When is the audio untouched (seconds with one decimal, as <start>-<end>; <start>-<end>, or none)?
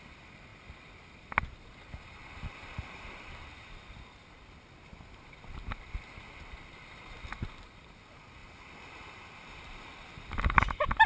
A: 0.0-11.1